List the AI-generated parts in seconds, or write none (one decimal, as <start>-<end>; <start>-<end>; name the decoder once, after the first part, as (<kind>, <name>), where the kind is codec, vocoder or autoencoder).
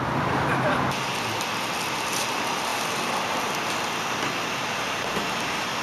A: none